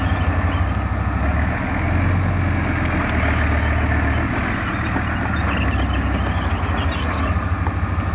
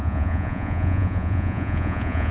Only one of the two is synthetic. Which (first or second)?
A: second